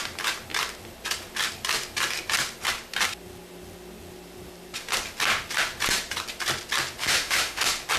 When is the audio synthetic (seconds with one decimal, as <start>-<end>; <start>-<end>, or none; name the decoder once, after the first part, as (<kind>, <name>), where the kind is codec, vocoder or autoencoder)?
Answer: 7.0-7.6 (autoencoder, DAC-VAE)